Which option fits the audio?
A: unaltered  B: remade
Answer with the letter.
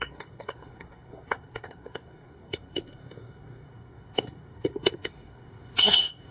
B